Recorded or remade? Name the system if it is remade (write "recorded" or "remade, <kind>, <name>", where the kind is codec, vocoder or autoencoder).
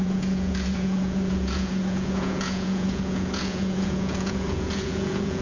remade, vocoder, Vocos